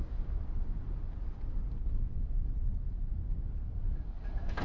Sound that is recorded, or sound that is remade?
recorded